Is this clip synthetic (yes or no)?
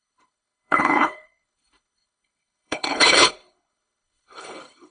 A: yes